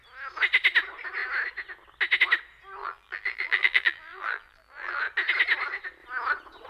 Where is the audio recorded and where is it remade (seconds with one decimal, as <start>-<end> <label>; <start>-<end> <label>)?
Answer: 0.0-2.8 recorded; 2.8-5.0 remade; 5.0-6.7 recorded